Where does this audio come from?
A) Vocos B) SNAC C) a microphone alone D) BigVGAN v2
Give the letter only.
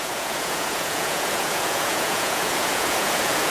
A